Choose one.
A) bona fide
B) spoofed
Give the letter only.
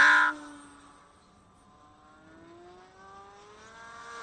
A